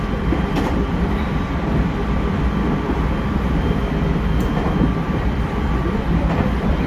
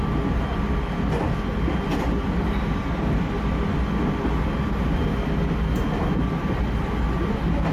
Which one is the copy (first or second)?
first